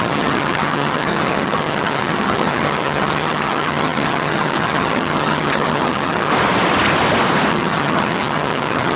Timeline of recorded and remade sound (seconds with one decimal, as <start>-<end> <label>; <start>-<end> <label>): 0.0-6.3 remade; 6.3-7.5 recorded; 7.5-9.0 remade